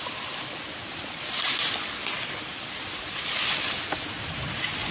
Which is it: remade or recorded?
recorded